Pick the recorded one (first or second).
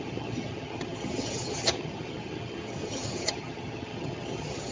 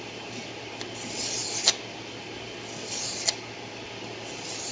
second